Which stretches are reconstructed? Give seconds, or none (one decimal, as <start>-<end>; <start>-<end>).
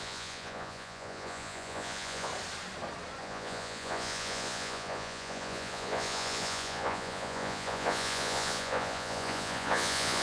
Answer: 0.0-2.3; 3.2-10.2